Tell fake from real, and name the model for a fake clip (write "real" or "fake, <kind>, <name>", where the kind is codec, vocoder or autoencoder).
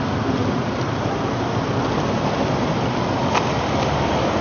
real